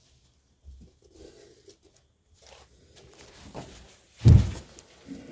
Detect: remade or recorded recorded